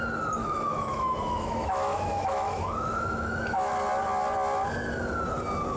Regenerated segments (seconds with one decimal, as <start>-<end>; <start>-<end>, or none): 0.4-3.7